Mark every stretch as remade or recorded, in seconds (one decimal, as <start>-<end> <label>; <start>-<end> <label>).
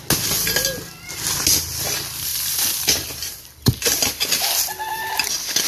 0.0-2.3 recorded; 2.3-4.7 remade; 4.7-5.7 recorded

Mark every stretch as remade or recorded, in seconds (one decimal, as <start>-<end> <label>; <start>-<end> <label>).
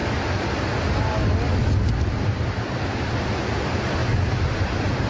0.0-4.0 recorded; 4.0-5.1 remade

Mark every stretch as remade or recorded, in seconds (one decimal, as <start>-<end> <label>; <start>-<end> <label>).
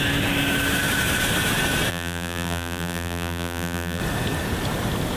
0.0-1.9 recorded; 1.9-4.0 remade; 4.0-5.2 recorded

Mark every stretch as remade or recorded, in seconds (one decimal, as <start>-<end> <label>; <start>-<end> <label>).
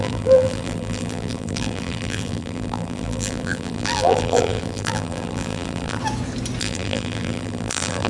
0.0-6.0 remade; 6.0-6.6 recorded; 6.6-8.1 remade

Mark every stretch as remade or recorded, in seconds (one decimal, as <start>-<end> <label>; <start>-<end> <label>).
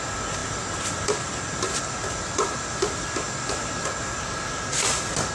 0.0-0.4 recorded; 0.4-3.6 remade; 3.6-5.3 recorded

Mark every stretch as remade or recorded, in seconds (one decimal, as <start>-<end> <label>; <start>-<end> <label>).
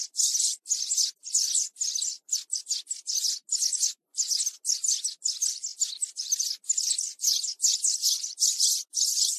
0.0-9.4 recorded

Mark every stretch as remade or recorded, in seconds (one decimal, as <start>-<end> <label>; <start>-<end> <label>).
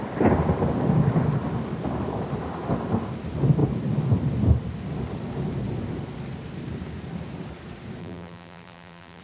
0.0-8.0 recorded; 8.0-9.2 remade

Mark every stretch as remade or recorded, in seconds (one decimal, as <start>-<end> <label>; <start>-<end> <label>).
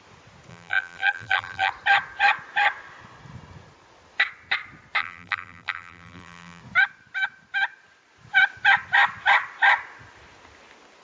0.0-0.5 recorded; 0.5-1.7 remade; 1.7-5.0 recorded; 5.0-6.6 remade; 6.6-11.0 recorded